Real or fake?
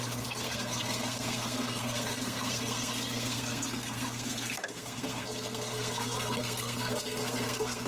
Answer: fake